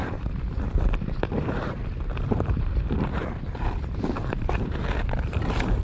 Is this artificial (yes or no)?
yes